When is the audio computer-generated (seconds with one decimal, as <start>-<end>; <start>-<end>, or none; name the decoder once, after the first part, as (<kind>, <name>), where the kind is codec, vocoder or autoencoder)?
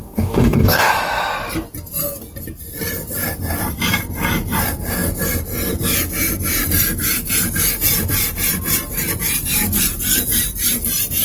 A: 0.0-0.9 (codec, DAC)